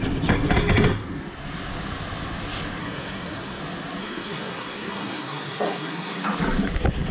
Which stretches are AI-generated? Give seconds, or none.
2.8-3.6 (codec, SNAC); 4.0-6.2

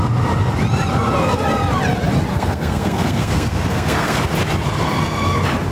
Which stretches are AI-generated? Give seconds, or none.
2.3-4.2 (codec, SNAC)

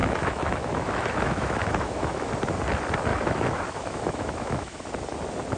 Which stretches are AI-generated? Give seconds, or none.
0.0-2.3 (autoencoder, DAC-VAE); 3.1-4.8

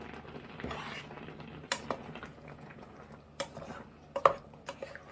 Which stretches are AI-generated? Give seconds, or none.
2.3-2.9 (vocoder, Vocos)

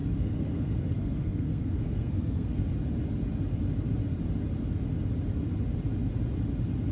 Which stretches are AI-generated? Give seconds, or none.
0.0-2.6 (codec, SNAC)